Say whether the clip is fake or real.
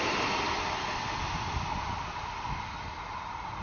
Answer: real